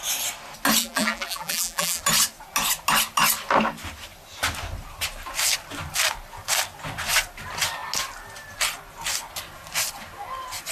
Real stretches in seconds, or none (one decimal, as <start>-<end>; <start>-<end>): 0.0-0.8; 2.0-10.7